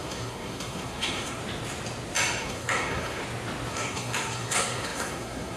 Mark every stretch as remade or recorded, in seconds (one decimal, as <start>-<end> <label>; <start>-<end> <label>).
0.0-1.4 remade; 1.4-2.4 recorded; 2.4-3.2 remade; 3.2-3.7 recorded; 3.7-5.6 remade